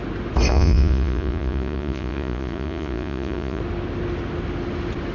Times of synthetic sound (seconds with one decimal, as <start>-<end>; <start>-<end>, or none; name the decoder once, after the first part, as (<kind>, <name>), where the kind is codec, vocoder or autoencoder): 0.5-3.6 (vocoder, Vocos)